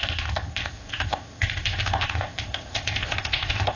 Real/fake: fake